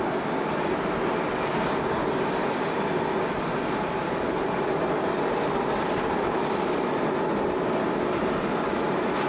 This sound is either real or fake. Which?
real